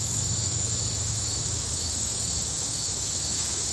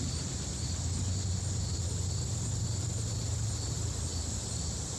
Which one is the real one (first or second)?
second